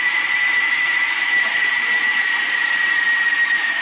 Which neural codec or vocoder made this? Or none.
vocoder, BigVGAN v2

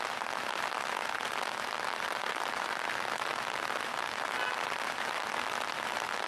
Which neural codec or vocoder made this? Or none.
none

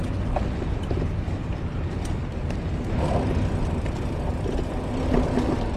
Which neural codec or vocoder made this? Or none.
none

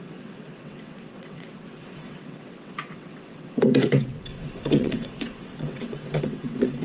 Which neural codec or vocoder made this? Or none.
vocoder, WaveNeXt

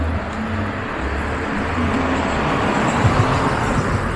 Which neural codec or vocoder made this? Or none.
none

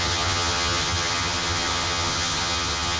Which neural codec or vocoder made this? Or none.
vocoder, HiFi-GAN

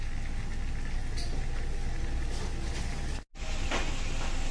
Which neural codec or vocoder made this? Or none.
none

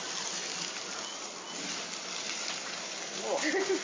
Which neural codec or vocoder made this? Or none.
none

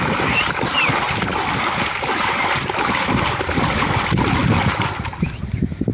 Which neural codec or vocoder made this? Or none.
none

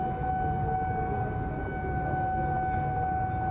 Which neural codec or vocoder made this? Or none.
none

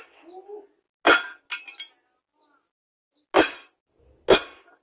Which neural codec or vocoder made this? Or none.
none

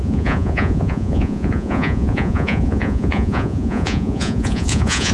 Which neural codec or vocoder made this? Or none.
vocoder, Vocos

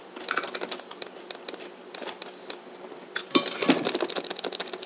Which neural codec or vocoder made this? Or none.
none